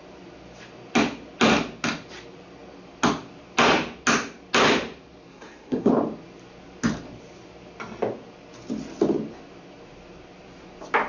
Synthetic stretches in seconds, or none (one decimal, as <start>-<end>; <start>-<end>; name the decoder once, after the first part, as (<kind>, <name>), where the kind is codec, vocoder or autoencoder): 5.3-5.9 (codec, SNAC)